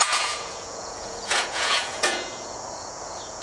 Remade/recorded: remade